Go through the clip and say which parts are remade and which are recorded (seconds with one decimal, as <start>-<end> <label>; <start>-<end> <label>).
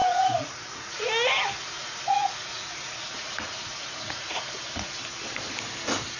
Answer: 0.0-1.1 remade; 1.1-1.8 recorded; 1.8-4.9 remade; 4.9-6.2 recorded